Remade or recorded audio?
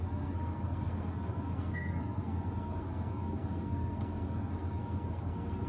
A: remade